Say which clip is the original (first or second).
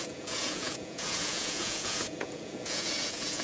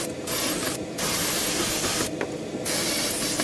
second